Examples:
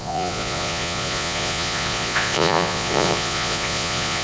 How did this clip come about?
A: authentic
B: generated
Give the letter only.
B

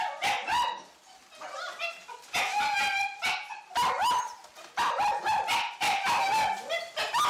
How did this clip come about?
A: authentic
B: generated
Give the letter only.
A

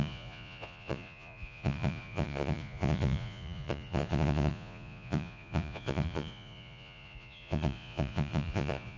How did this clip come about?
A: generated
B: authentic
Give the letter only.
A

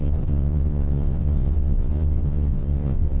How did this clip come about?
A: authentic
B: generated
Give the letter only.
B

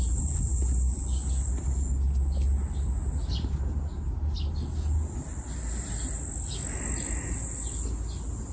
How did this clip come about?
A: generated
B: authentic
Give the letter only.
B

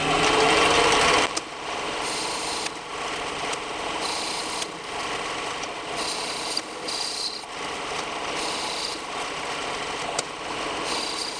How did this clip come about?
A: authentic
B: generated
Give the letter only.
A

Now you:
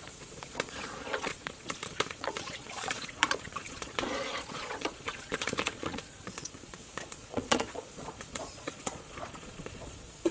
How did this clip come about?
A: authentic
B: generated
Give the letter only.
B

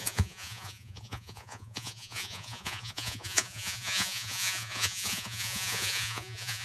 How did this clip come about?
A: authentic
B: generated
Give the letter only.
B